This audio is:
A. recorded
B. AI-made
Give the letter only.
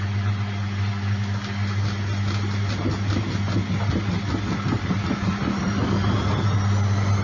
A